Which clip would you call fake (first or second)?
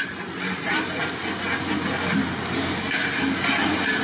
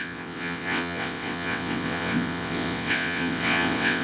second